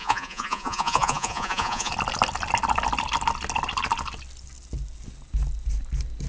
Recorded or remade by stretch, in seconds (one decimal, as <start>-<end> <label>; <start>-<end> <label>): 0.0-1.9 remade; 1.9-6.3 recorded